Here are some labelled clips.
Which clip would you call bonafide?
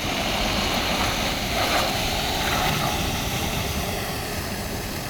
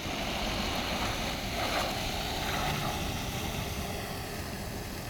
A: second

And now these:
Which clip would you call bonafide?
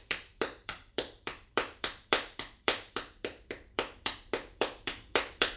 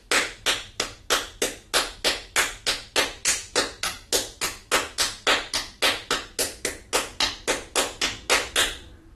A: second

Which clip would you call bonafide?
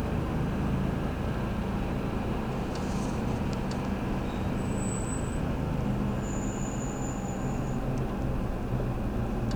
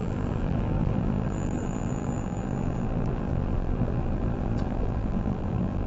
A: first